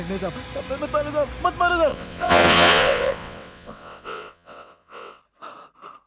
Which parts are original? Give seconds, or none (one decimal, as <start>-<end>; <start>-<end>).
0.0-1.9; 5.2-6.1